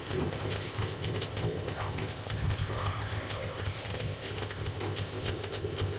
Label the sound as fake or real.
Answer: fake